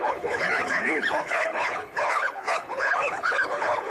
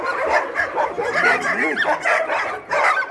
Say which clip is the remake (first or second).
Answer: first